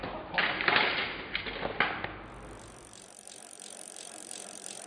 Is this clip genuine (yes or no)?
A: yes